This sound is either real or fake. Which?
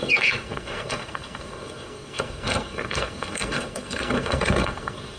fake